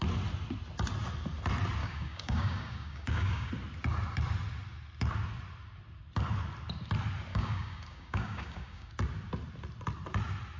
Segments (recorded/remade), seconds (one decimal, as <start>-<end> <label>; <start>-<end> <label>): 0.0-1.8 recorded; 1.8-3.5 remade; 3.5-7.3 recorded; 7.3-8.9 remade; 8.9-10.6 recorded